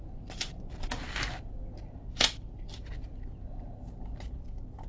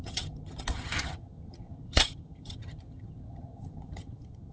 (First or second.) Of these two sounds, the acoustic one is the first